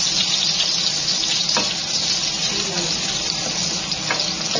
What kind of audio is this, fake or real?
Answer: real